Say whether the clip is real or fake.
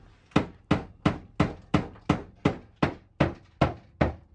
real